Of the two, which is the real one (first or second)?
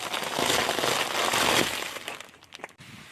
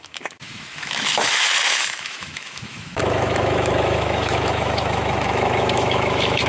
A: first